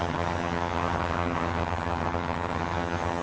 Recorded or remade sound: remade